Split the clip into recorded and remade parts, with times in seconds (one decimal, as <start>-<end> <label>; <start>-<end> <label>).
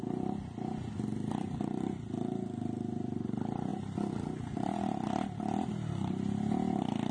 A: 0.0-7.1 recorded